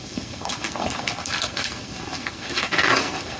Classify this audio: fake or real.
fake